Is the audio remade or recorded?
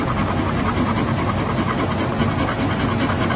recorded